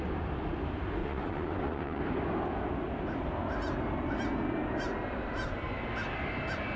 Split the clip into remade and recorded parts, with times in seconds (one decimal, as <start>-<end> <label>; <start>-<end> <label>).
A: 0.0-1.0 recorded; 1.0-2.0 remade; 2.0-6.8 recorded